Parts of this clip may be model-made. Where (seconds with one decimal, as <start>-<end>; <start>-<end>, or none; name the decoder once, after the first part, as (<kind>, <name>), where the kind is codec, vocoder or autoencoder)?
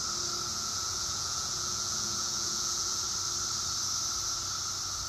0.5-3.0 (vocoder, Vocos)